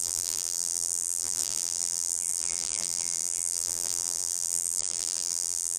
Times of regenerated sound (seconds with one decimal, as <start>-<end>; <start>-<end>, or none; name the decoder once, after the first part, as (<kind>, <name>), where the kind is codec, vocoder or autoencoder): 0.0-5.8 (vocoder, BigVGAN v2)